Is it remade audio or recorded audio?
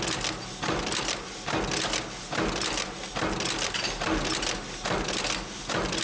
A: recorded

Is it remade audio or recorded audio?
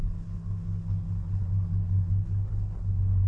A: remade